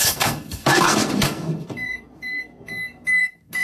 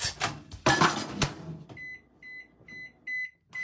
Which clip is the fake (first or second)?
first